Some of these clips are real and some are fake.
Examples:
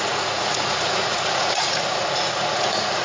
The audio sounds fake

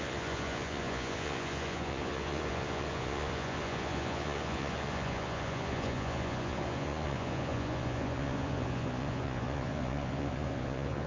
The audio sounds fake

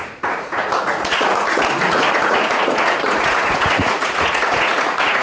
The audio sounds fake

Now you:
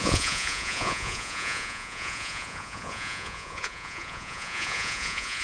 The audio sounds fake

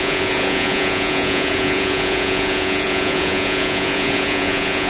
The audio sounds fake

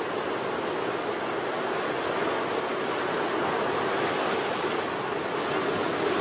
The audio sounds real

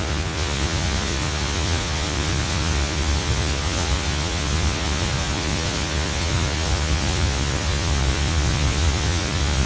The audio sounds fake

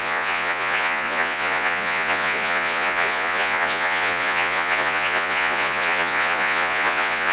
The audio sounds fake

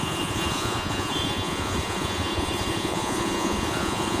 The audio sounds fake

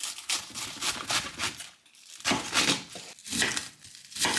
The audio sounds real